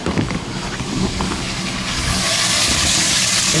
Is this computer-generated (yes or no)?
yes